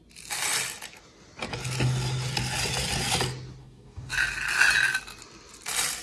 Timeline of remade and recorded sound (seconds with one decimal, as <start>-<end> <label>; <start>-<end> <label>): 0.0-3.6 recorded; 3.6-4.1 remade; 4.1-6.0 recorded

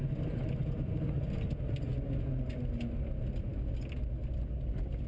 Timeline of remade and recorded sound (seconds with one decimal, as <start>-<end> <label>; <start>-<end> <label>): 0.0-5.1 recorded

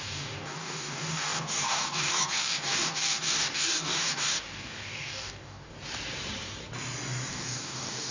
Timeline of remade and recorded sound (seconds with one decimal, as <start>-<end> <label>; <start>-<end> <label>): 0.0-5.7 remade; 5.7-7.3 recorded; 7.3-8.1 remade

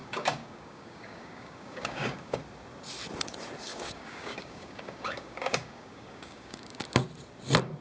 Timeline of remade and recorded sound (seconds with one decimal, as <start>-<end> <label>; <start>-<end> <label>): 0.0-2.4 remade; 2.4-3.7 recorded; 3.7-6.8 remade; 6.8-7.8 recorded